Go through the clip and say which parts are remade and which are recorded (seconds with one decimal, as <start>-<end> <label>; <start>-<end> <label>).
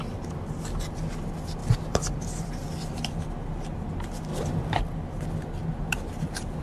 0.0-1.6 recorded; 1.6-2.5 remade; 2.5-6.6 recorded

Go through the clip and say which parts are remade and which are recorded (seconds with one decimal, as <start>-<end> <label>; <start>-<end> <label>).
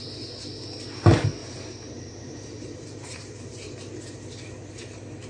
0.0-1.4 recorded; 1.4-3.8 remade; 3.8-5.3 recorded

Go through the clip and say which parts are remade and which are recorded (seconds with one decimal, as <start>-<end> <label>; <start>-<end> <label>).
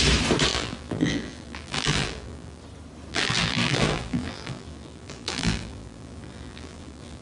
0.0-0.5 recorded; 0.5-2.6 remade; 2.6-3.1 recorded; 3.1-7.2 remade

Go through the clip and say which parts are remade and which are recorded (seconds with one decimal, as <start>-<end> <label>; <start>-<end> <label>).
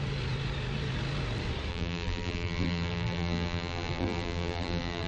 0.0-1.7 recorded; 1.7-5.1 remade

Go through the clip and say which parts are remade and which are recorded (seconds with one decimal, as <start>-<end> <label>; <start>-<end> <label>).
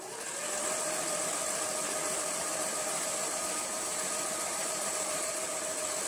0.0-0.6 recorded; 0.6-1.4 remade; 1.4-2.0 recorded; 2.0-5.6 remade; 5.6-6.1 recorded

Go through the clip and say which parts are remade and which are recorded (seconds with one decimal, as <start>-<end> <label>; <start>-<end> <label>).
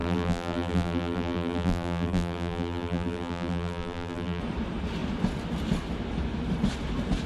0.0-4.4 remade; 4.4-7.3 recorded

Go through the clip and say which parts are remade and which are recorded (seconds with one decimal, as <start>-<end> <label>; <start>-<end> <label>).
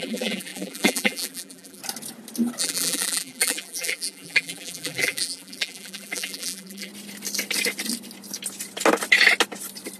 0.0-1.8 remade; 1.8-2.6 recorded; 2.6-6.9 remade; 6.9-10.0 recorded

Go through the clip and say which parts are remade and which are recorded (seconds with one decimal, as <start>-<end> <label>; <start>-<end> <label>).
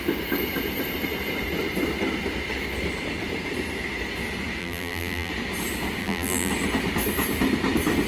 0.0-4.6 recorded; 4.6-5.3 remade; 5.3-6.0 recorded; 6.0-6.5 remade; 6.5-8.1 recorded